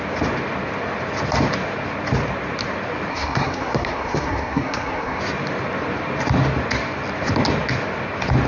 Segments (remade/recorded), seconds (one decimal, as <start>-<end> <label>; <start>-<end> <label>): 0.0-3.1 recorded; 3.1-5.2 remade; 5.2-8.5 recorded